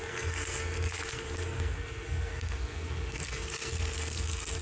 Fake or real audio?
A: fake